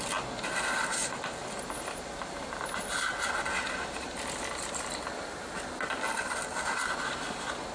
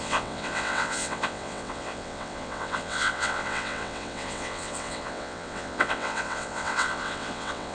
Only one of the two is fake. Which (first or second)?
second